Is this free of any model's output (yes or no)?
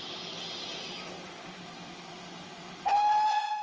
yes